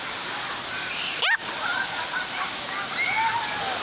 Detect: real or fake real